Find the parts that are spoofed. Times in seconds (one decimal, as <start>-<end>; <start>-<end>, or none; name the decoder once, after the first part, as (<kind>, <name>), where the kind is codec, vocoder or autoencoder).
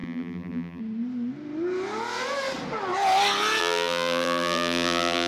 0.0-0.8 (vocoder, BigVGAN v2); 3.6-5.3